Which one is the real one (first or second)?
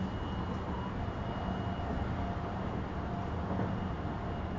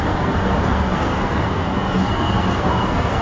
first